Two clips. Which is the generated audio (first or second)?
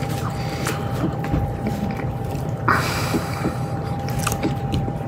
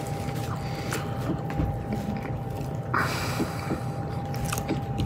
first